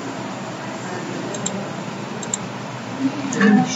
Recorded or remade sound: remade